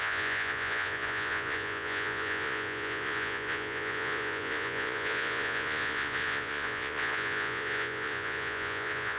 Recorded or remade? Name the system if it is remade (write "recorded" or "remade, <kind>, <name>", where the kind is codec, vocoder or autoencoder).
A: remade, vocoder, Vocos